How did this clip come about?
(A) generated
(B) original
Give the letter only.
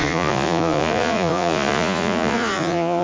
A